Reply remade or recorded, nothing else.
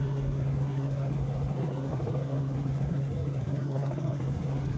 remade